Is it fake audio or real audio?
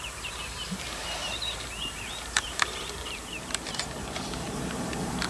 fake